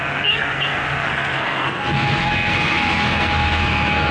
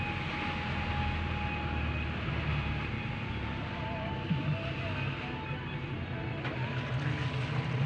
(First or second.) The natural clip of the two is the second